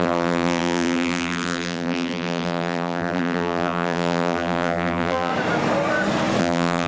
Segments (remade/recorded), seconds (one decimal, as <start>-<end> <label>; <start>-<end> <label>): 0.0-5.3 remade; 5.3-6.4 recorded; 6.4-6.9 remade